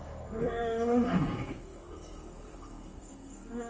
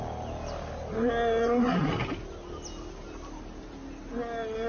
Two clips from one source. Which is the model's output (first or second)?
first